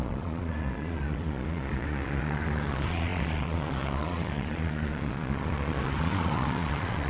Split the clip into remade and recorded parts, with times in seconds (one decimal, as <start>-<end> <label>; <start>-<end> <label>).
0.0-7.1 remade